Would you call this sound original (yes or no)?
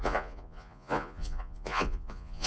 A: no